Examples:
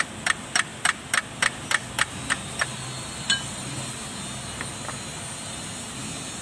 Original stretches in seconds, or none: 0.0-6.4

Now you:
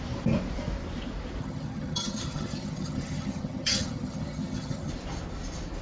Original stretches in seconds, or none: 0.0-1.4; 4.9-5.8